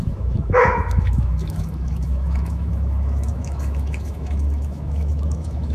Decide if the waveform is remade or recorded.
remade